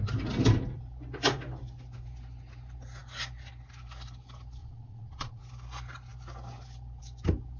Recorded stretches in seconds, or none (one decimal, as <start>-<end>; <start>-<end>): 0.0-4.6; 5.4-7.6